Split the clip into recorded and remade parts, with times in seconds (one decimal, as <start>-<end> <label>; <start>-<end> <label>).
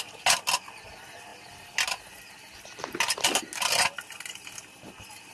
0.0-5.3 recorded